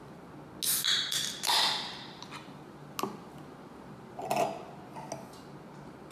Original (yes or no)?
yes